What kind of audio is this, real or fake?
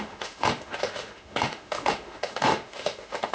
fake